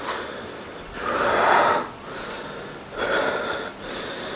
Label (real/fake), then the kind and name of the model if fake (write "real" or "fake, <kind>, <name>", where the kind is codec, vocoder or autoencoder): fake, vocoder, BigVGAN v2